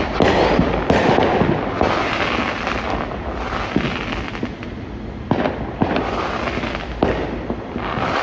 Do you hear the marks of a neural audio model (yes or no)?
no